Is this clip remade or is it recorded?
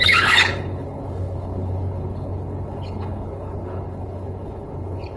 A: remade